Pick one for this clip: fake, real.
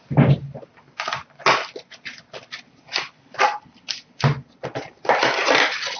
real